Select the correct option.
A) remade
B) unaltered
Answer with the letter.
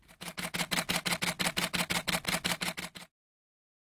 B